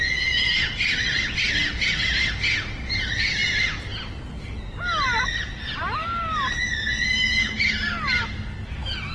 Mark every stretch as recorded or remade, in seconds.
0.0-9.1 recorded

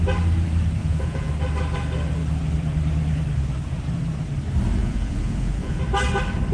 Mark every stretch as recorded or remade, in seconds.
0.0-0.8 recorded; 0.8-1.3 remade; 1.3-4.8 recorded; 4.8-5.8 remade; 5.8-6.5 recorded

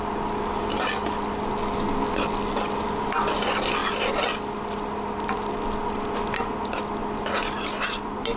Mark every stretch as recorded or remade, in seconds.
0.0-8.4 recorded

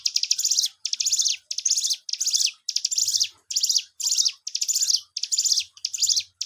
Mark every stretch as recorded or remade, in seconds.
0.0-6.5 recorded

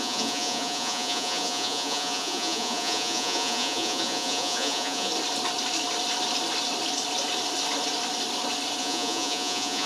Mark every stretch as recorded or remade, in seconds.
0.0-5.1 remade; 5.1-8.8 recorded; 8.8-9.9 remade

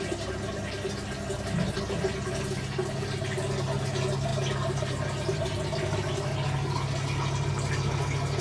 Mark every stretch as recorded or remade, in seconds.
0.0-8.4 recorded

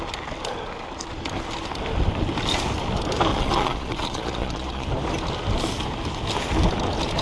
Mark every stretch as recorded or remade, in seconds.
0.0-3.3 recorded; 3.3-4.9 remade; 4.9-7.2 recorded

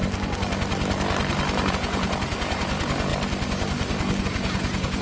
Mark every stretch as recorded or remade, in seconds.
0.0-1.7 recorded; 1.7-3.1 remade; 3.1-4.2 recorded; 4.2-5.0 remade